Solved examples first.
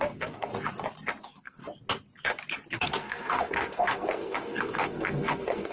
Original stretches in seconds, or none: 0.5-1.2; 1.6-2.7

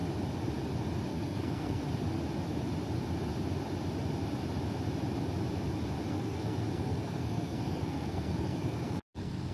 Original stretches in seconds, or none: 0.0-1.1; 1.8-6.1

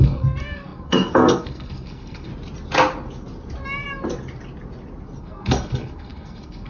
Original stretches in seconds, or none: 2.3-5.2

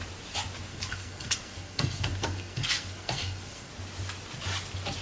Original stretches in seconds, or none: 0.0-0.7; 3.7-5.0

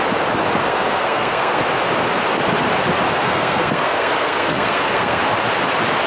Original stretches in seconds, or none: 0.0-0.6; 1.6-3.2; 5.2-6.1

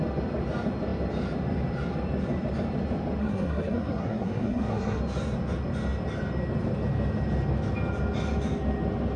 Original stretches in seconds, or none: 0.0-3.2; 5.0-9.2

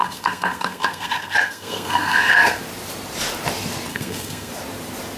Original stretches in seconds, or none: 2.6-3.9; 4.5-5.2